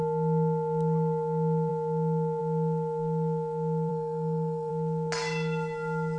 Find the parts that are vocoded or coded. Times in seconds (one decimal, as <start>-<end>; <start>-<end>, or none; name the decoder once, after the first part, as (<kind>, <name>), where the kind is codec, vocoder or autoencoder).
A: 3.9-4.7 (codec, SNAC)